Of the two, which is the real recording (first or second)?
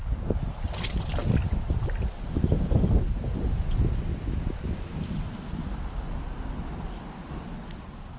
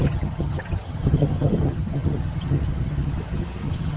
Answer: first